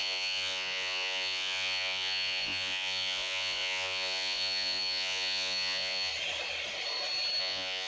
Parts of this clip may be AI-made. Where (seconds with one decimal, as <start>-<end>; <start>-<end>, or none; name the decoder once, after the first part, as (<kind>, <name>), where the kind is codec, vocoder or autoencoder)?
0.0-6.1 (vocoder, Vocos); 7.4-7.9